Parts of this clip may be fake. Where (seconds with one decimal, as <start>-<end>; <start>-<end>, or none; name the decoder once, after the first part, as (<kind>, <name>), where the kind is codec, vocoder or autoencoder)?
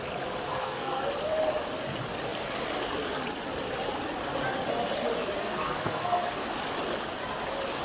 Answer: 0.5-1.1 (codec, SNAC); 5.4-6.5